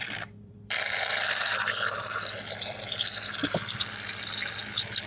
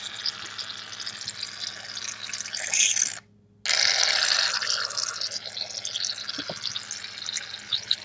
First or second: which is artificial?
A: first